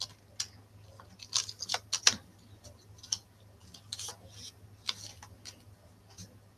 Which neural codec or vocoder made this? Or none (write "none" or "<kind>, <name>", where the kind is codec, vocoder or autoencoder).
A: none